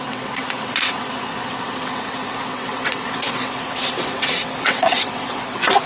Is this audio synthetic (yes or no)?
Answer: yes